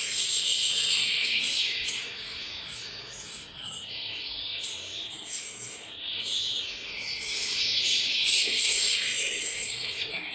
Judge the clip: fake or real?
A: fake